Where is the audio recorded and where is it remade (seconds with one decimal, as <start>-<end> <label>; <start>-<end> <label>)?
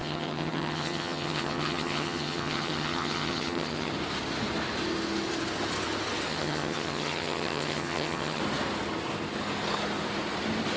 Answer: 0.0-3.9 remade; 3.9-6.3 recorded; 6.3-8.4 remade; 8.4-10.8 recorded